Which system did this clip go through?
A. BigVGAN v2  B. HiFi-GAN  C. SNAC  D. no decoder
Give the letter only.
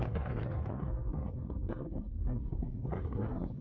C